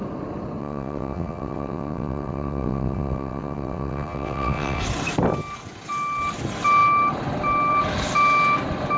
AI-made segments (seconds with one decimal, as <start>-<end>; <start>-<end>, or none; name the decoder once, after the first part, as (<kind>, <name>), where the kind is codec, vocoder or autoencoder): 0.6-4.8 (vocoder, WaveNeXt)